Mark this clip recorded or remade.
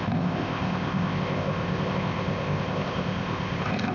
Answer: remade